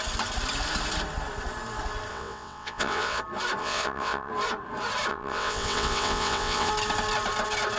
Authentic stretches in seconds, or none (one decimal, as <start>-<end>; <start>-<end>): 0.0-2.1; 3.2-3.6; 4.3-5.1; 6.7-7.8